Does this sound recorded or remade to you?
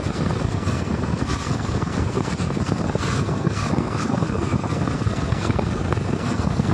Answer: remade